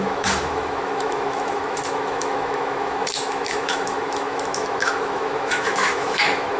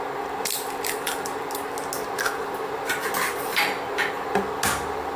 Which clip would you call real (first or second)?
second